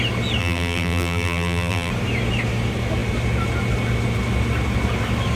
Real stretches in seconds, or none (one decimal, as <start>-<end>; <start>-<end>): 0.0-0.4; 1.9-5.4